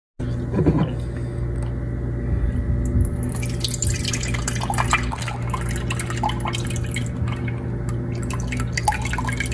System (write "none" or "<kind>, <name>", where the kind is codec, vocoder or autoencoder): none